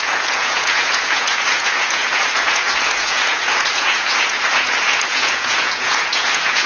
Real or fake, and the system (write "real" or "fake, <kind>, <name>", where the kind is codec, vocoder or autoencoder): fake, vocoder, Vocos